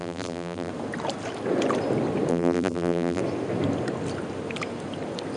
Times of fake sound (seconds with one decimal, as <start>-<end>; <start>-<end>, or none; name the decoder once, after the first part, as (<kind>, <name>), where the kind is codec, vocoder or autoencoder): 0.0-0.7 (vocoder, BigVGAN v2); 2.3-3.2